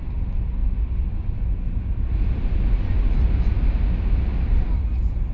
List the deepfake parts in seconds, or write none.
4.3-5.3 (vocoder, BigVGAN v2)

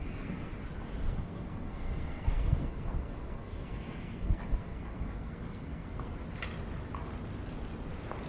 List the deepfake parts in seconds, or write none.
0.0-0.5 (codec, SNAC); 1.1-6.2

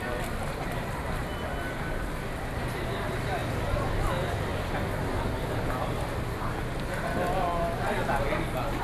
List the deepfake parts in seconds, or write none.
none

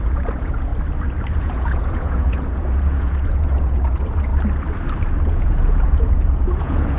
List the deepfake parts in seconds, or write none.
0.0-0.7 (vocoder, Vocos); 1.4-4.3; 5.3-7.0